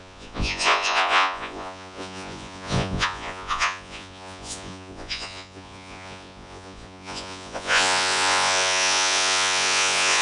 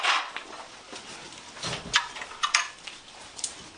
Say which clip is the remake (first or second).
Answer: first